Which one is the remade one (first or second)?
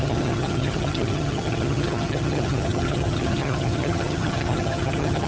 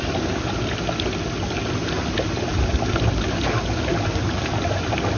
first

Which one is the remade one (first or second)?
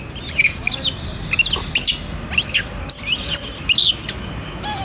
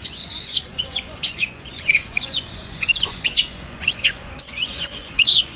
second